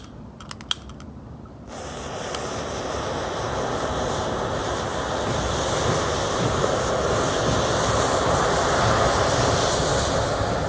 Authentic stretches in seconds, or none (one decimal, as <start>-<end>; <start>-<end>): 0.0-10.7